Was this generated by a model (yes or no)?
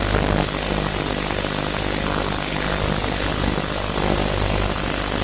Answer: no